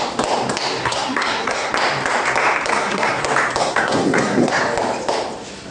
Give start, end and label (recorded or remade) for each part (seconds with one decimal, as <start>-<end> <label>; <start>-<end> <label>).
0.0-0.8 recorded; 0.8-1.7 remade; 1.7-2.7 recorded; 2.7-3.2 remade; 3.2-3.6 recorded; 3.6-4.6 remade; 4.6-5.7 recorded